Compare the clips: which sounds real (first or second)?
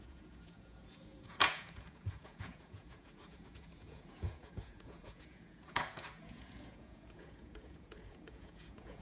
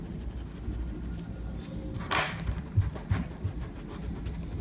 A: second